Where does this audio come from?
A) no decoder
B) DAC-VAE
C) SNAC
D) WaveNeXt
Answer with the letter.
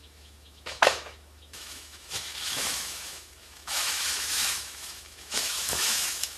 B